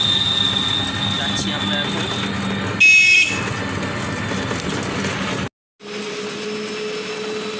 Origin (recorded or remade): recorded